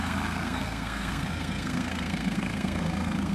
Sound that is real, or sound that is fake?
fake